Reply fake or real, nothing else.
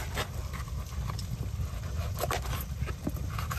real